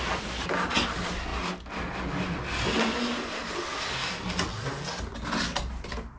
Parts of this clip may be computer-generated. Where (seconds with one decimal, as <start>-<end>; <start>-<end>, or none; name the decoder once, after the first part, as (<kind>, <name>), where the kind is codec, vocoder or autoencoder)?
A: none